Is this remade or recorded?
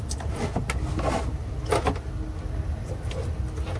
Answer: recorded